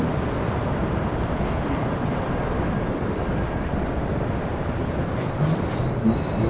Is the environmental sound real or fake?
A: fake